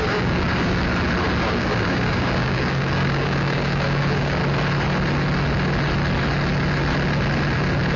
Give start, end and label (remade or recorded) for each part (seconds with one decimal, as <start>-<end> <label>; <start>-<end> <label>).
0.0-0.9 remade; 0.9-1.5 recorded; 1.5-4.4 remade; 4.4-8.0 recorded